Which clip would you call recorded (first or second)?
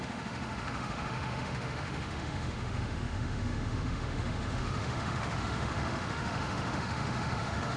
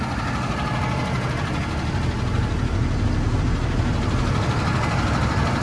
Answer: second